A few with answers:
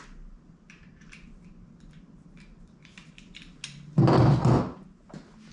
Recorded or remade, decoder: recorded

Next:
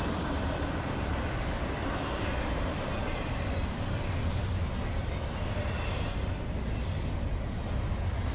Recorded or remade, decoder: recorded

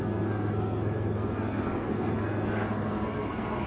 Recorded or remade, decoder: remade, codec, SNAC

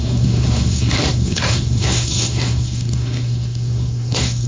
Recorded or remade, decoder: remade, codec, SNAC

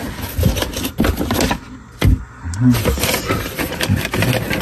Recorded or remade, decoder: recorded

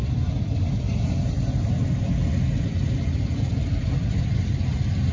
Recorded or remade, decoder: recorded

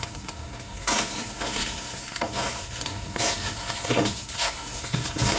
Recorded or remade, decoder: remade, codec, SNAC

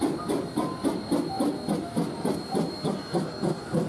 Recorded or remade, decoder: recorded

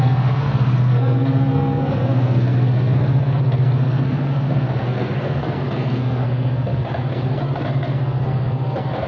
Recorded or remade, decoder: remade, codec, SNAC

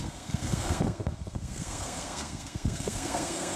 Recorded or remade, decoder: remade, codec, SNAC